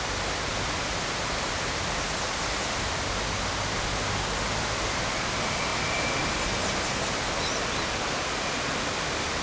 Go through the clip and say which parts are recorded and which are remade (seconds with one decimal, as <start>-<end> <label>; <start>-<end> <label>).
0.0-9.4 recorded